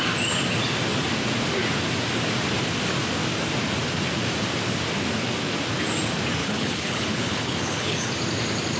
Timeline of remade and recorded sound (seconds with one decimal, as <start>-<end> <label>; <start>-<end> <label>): 0.0-6.4 recorded; 6.4-8.1 remade; 8.1-8.8 recorded